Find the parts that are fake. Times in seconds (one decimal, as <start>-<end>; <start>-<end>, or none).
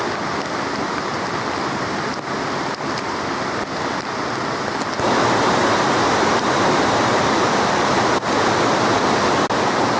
7.1-7.9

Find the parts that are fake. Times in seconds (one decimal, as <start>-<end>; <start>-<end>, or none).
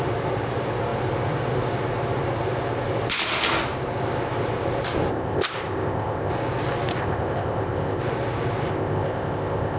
5.1-6.3; 7.0-8.0; 8.7-9.8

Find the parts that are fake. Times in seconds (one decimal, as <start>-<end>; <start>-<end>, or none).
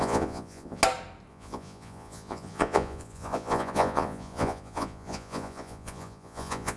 0.0-0.8; 1.3-6.8